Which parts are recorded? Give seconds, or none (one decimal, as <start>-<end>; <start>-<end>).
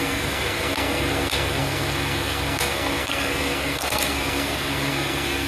none